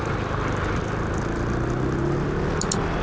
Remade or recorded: recorded